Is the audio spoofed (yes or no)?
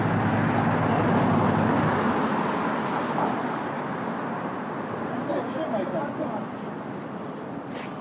no